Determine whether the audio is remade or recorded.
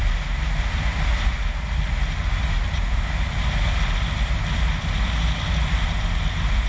recorded